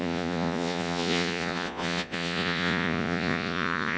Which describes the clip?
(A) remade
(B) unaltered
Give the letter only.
A